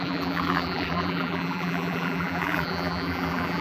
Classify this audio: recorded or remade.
remade